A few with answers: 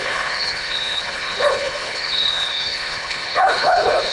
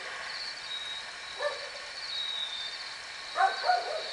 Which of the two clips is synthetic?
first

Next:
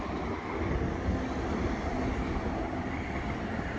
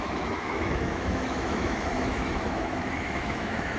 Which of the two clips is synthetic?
second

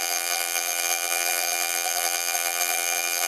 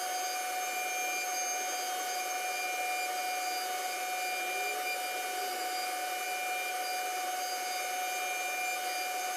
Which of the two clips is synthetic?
first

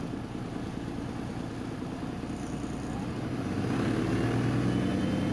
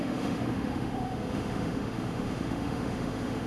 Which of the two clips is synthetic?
second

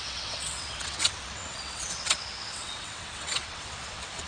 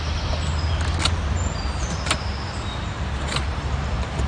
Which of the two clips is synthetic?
first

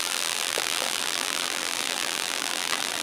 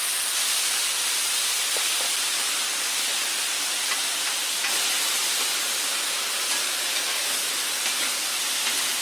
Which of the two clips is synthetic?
first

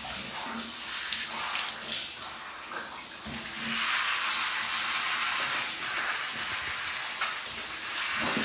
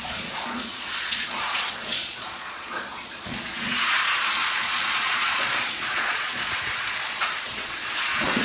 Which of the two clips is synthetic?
second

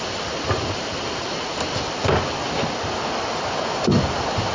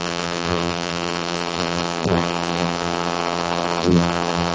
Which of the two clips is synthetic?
second